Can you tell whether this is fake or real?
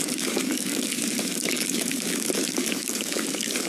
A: fake